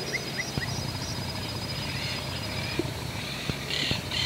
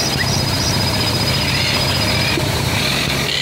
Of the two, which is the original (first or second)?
second